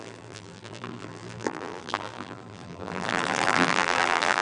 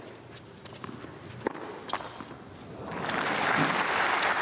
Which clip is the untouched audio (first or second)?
second